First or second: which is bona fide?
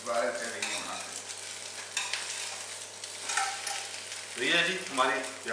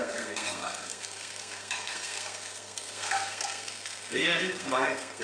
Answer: first